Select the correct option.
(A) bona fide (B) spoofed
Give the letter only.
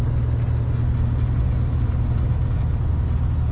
A